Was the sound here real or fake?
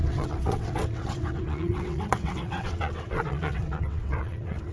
fake